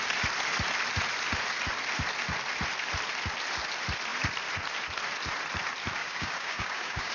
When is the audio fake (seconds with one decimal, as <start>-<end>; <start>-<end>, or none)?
6.0-7.1